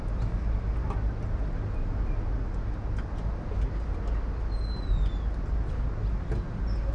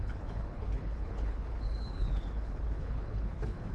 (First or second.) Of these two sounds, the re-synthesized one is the second